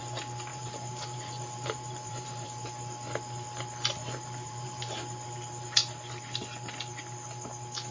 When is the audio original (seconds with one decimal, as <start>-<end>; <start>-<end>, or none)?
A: 0.0-0.5; 2.7-4.0; 5.0-7.9